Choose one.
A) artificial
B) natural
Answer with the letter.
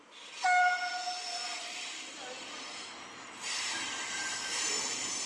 B